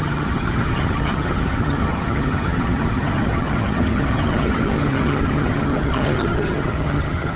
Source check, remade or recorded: remade